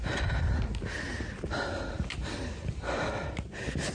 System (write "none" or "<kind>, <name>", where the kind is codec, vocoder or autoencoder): none